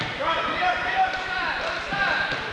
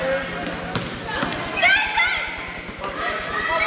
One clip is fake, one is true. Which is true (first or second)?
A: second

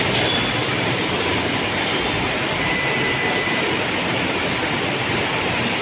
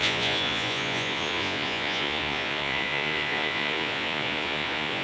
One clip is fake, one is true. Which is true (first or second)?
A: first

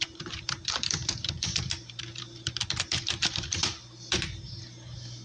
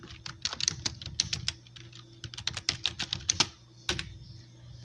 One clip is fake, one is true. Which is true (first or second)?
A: second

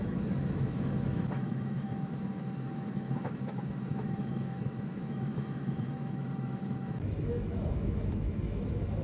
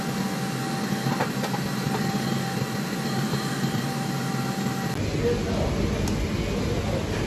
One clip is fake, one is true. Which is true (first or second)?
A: second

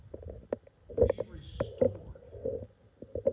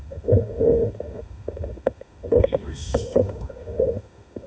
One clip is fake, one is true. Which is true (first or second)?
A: first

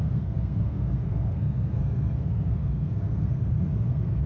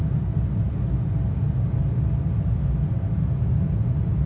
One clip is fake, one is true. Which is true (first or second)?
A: second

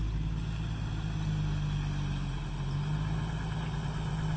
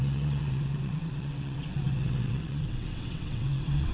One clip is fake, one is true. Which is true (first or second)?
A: first